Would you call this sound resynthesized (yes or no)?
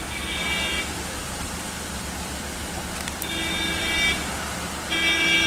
no